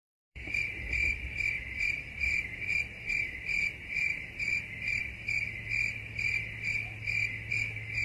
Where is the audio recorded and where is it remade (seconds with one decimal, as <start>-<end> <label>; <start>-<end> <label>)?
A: 0.0-0.5 remade; 0.5-8.0 recorded